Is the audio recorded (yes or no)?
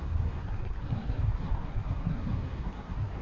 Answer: no